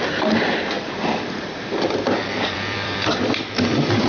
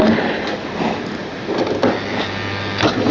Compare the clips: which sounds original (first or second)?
second